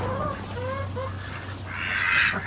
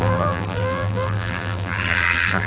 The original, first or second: first